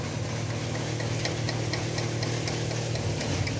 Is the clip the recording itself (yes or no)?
yes